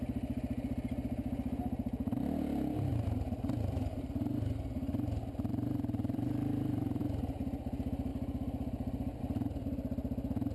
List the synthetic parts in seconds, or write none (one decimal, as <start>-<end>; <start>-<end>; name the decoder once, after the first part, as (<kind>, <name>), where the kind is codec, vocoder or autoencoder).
2.9-4.1 (vocoder, BigVGAN v2); 5.5-7.0